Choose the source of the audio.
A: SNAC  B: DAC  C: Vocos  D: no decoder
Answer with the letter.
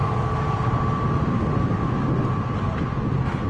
D